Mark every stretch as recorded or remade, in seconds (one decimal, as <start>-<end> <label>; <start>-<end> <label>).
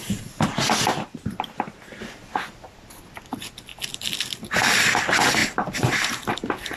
0.0-0.9 recorded; 0.9-2.0 remade; 2.0-5.4 recorded; 5.4-6.3 remade; 6.3-6.8 recorded